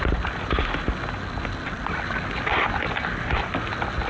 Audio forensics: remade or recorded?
recorded